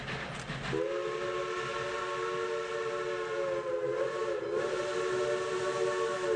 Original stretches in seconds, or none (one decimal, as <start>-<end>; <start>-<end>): 0.0-6.4

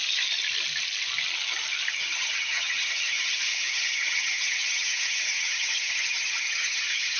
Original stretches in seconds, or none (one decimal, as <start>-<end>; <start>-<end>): 0.0-1.9

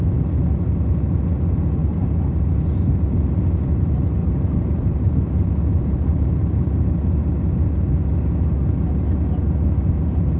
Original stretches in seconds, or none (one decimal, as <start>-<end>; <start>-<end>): 0.0-1.8; 2.5-4.2; 6.8-10.4